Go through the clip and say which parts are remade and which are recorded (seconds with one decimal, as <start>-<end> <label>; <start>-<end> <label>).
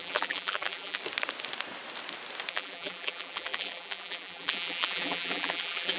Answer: 0.0-1.0 remade; 1.0-2.5 recorded; 2.5-6.0 remade